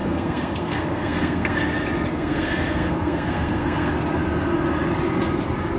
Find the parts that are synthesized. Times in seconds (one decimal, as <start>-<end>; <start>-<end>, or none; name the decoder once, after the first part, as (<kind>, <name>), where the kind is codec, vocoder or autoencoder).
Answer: 0.0-1.6 (codec, SNAC); 2.1-3.9